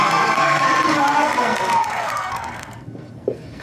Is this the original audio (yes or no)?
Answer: no